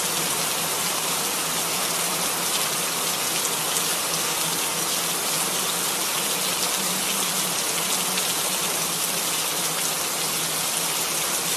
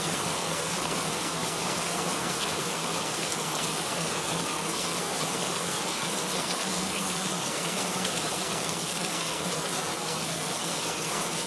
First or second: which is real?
first